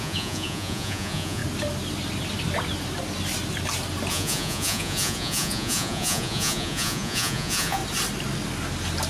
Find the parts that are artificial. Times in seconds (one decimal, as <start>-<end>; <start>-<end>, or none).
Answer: 0.0-1.4; 4.1-7.8